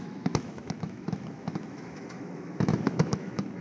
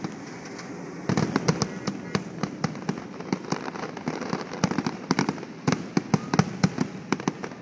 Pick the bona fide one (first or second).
second